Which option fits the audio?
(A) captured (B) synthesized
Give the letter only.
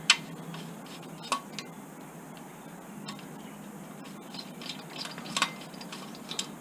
A